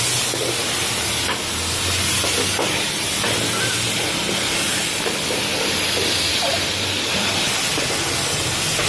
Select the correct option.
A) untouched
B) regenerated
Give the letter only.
A